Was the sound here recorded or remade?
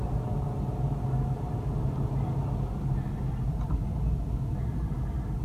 recorded